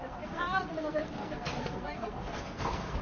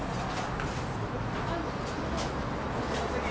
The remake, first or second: first